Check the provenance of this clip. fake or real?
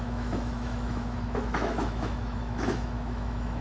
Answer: fake